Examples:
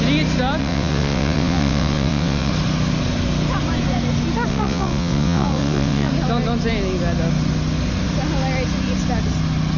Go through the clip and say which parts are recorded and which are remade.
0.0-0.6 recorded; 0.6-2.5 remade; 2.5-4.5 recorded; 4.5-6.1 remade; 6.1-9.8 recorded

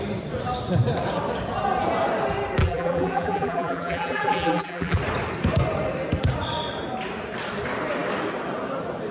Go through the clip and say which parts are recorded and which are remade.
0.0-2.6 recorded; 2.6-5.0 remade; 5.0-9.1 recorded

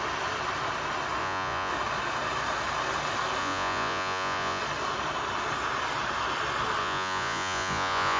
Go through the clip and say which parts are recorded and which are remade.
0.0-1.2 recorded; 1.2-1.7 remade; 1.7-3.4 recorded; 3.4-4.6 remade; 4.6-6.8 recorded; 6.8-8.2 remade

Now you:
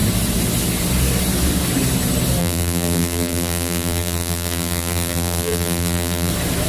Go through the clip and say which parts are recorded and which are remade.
0.0-2.4 recorded; 2.4-6.3 remade; 6.3-6.7 recorded

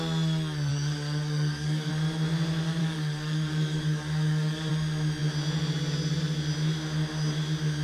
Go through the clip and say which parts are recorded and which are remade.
0.0-0.7 recorded; 0.7-1.9 remade; 1.9-2.8 recorded; 2.8-4.7 remade; 4.7-7.8 recorded

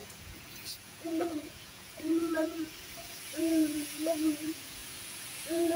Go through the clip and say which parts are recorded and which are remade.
0.0-5.8 remade

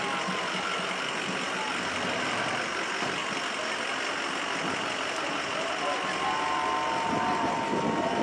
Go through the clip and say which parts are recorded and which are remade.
0.0-8.2 recorded

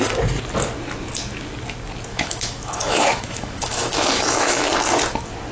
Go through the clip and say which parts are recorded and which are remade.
0.0-2.1 recorded; 2.1-4.7 remade; 4.7-5.5 recorded